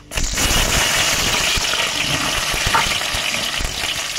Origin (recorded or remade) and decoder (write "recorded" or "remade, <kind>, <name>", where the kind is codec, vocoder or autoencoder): recorded